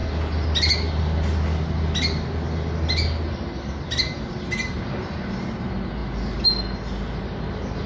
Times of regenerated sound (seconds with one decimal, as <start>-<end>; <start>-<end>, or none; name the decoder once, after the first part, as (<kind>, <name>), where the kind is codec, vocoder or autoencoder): none